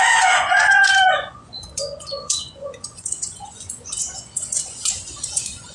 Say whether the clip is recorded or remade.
remade